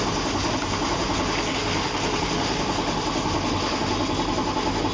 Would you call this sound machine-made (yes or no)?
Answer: no